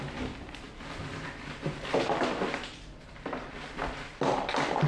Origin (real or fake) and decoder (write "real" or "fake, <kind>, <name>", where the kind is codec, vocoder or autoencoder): real